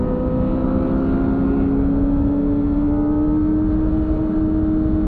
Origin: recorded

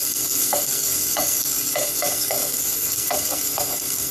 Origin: remade